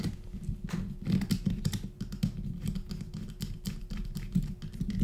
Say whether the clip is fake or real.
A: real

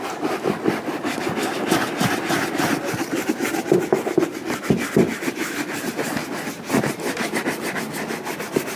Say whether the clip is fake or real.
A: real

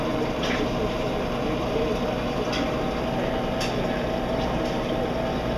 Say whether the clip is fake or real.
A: real